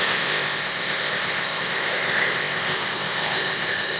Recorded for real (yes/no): no